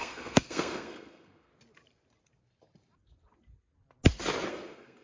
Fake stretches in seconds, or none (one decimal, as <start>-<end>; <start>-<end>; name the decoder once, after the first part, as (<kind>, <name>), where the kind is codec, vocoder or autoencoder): 0.0-1.5 (codec, SNAC); 4.5-5.0